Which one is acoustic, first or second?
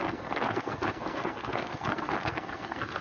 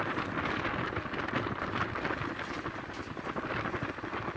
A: second